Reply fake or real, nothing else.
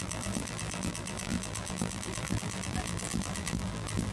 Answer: fake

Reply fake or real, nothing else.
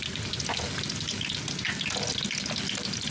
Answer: real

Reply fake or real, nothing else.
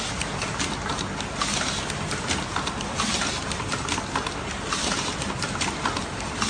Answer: real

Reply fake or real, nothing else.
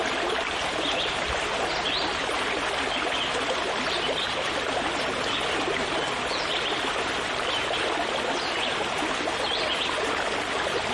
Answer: real